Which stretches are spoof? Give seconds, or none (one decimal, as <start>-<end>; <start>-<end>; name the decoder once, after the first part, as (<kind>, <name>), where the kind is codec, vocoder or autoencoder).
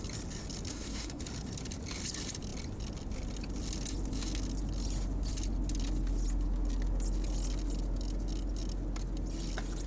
0.7-1.2 (codec, SNAC)